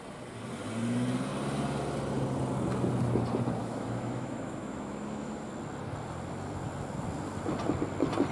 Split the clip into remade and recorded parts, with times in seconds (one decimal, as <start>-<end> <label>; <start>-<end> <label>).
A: 0.0-3.6 recorded; 3.6-5.5 remade; 5.5-8.3 recorded